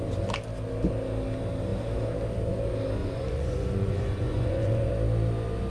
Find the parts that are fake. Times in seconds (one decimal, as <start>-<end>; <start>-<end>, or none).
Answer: 3.0-4.9

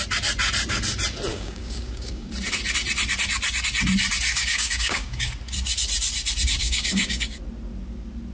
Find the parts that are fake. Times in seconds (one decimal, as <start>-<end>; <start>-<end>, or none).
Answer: 1.3-2.3; 4.3-5.3; 6.6-7.4

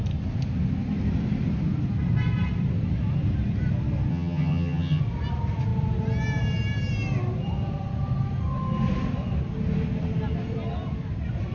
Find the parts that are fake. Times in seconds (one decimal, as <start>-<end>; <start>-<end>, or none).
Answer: 4.1-5.0

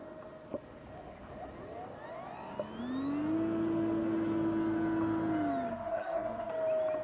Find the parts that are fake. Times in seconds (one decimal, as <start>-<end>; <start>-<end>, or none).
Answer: 5.7-6.5

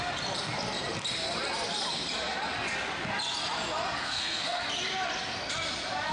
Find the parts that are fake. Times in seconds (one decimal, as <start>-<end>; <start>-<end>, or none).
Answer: 4.0-4.6

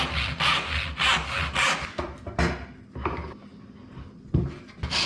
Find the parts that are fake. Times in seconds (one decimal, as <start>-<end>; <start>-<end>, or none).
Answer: none

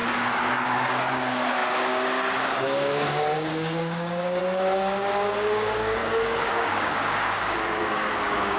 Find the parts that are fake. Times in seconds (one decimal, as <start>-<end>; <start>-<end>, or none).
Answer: 0.0-8.6

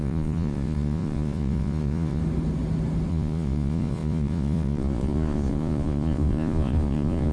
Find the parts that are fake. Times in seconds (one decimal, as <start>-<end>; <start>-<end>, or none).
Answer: 0.0-2.2; 3.1-7.3